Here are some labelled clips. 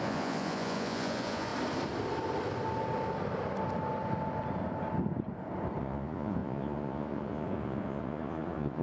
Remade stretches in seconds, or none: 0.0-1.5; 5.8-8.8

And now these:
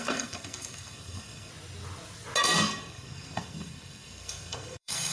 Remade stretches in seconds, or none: 0.0-1.5; 2.4-5.1